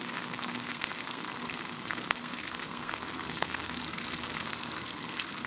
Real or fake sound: fake